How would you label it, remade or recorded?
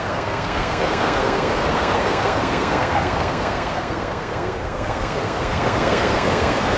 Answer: remade